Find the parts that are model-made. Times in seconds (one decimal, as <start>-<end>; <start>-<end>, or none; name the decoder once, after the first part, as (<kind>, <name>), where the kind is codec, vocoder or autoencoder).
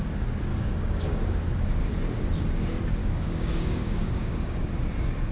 0.5-1.3 (codec, DAC); 3.0-4.6